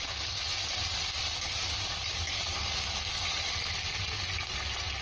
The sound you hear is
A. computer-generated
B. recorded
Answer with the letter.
B